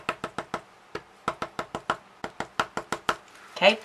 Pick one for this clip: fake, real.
real